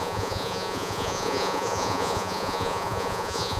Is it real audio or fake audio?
fake